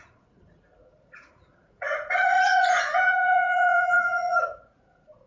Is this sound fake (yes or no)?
yes